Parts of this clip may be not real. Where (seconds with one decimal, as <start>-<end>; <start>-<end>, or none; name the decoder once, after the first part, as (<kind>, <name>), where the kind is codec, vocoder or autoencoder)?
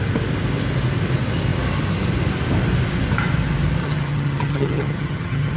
3.8-5.6 (vocoder, HiFi-GAN)